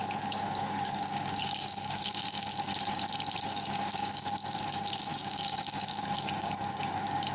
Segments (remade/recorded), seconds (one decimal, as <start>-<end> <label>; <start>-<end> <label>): 0.0-2.7 remade; 2.7-3.4 recorded; 3.4-7.3 remade